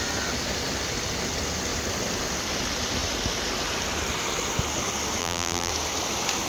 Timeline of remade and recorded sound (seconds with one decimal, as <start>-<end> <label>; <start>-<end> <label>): 0.0-5.2 recorded; 5.2-5.7 remade; 5.7-6.5 recorded